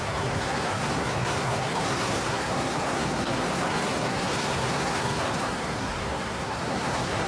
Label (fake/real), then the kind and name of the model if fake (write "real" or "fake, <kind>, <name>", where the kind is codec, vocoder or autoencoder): fake, codec, SNAC